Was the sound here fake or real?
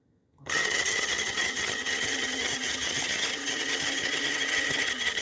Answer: fake